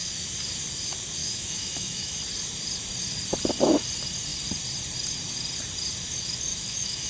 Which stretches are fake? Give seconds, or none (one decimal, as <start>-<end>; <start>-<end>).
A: 1.2-2.2; 6.5-7.1